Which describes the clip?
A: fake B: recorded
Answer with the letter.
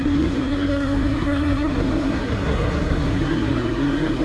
A